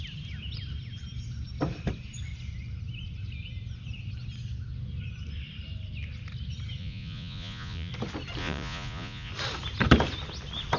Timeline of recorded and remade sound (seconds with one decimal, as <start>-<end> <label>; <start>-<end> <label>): 0.0-6.8 recorded; 6.8-7.9 remade; 7.9-8.4 recorded; 8.4-9.3 remade; 9.3-10.8 recorded